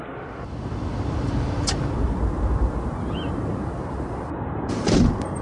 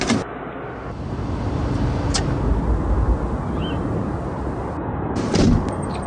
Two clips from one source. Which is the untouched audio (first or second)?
second